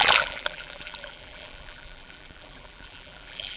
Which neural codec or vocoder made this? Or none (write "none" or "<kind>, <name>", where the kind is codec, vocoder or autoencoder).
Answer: vocoder, BigVGAN v2